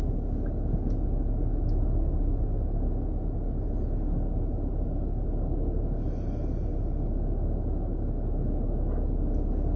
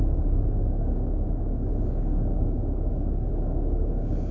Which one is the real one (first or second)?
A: first